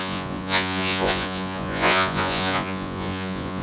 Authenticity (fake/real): fake